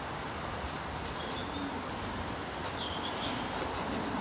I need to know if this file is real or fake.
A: real